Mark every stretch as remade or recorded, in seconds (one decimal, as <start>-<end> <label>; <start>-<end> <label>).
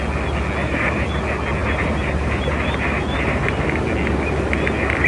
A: 0.0-0.6 recorded; 0.6-1.2 remade; 1.2-1.6 recorded; 1.6-3.6 remade; 3.6-5.1 recorded